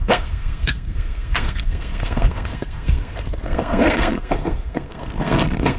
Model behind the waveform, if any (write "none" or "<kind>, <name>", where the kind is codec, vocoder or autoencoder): codec, SNAC